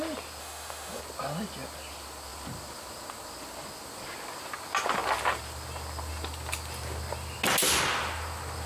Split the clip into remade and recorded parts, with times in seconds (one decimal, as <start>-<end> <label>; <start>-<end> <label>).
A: 0.0-0.4 recorded; 0.4-1.0 remade; 1.0-8.7 recorded